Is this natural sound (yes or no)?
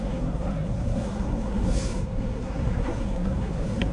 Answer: no